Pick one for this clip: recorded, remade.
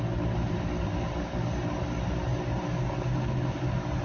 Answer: recorded